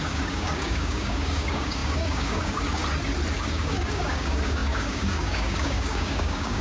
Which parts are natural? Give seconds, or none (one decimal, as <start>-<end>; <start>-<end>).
2.8-3.3